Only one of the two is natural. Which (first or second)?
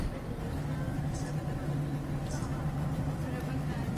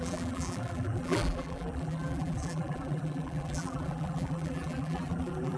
first